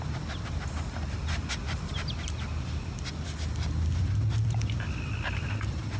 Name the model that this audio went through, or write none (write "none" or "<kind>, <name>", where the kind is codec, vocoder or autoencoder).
none